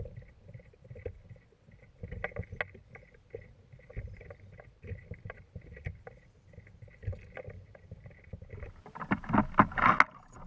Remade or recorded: recorded